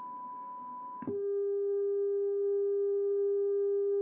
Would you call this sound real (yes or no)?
no